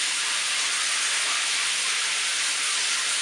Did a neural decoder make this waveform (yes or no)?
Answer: no